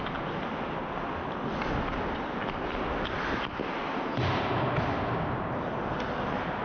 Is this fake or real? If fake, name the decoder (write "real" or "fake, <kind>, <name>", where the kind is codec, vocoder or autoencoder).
real